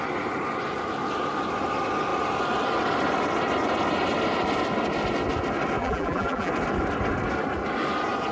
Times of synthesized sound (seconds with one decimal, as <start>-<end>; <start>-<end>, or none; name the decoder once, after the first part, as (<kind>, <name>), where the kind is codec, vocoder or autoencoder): 5.8-6.5 (vocoder, BigVGAN v2)